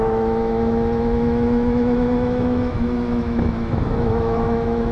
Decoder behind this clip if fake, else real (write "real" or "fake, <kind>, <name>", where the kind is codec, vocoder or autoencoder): fake, autoencoder, DAC-VAE